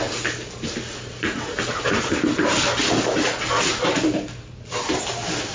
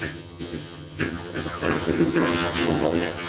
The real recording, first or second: first